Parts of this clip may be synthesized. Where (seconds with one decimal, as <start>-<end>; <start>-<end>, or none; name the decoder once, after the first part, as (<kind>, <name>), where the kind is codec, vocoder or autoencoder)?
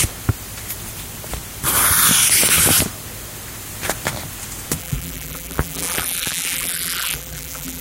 4.8-7.8 (vocoder, BigVGAN v2)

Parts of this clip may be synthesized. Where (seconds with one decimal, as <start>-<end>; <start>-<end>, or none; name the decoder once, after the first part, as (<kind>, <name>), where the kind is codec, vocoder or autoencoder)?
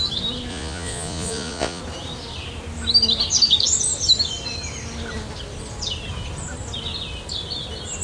0.5-1.8 (vocoder, Vocos)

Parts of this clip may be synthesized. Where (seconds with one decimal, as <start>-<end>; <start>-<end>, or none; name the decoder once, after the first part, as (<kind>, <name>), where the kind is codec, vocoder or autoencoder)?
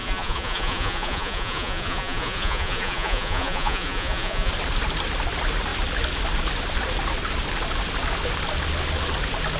0.0-4.5 (vocoder, Vocos)